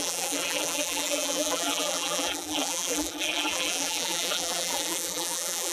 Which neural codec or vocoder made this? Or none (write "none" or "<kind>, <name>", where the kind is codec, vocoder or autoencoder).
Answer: vocoder, BigVGAN v2